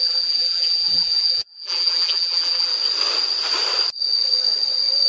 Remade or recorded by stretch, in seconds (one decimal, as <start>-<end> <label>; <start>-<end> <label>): 0.0-2.7 remade; 2.7-5.1 recorded

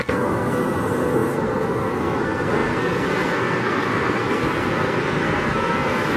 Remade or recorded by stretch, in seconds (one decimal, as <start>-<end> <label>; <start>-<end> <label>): 0.0-6.2 remade

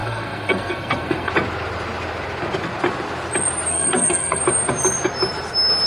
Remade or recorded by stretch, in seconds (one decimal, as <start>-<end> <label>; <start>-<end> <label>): 0.0-1.3 remade; 1.3-3.7 recorded; 3.7-4.4 remade; 4.4-5.9 recorded

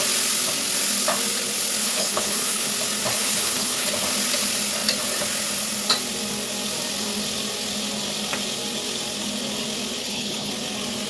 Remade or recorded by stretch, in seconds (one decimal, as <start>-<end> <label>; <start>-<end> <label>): 0.0-1.8 recorded; 1.8-2.7 remade; 2.7-3.1 recorded; 3.1-3.9 remade; 3.9-10.0 recorded; 10.0-10.5 remade; 10.5-11.1 recorded

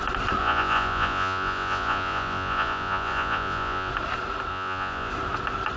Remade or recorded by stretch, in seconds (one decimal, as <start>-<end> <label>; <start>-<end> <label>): 0.0-0.4 recorded; 0.4-3.9 remade; 3.9-4.5 recorded; 4.5-5.1 remade; 5.1-5.8 recorded

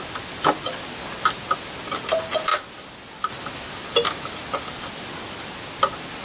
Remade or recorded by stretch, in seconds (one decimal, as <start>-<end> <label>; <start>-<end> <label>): 0.0-6.2 recorded

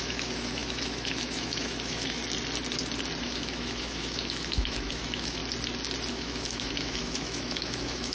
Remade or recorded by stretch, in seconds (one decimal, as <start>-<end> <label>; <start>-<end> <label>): 0.0-2.2 remade; 2.2-3.2 recorded; 3.2-5.4 remade; 5.4-6.1 recorded; 6.1-8.1 remade